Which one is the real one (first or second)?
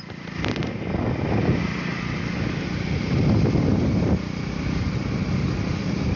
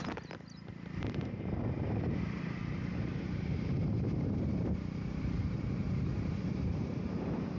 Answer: first